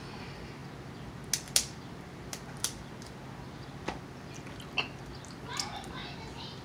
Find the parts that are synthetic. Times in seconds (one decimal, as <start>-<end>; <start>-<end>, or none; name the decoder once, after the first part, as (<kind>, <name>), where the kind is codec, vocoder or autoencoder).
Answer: none